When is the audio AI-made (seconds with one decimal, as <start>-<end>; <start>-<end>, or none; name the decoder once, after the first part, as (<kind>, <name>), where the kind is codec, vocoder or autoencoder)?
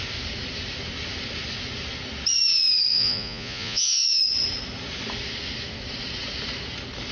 2.9-4.2 (vocoder, Vocos)